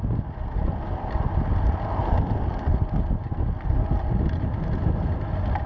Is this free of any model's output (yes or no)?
yes